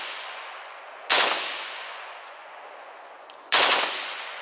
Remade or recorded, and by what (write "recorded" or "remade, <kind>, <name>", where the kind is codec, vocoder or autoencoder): remade, vocoder, Vocos